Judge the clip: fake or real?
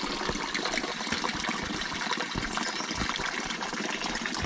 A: fake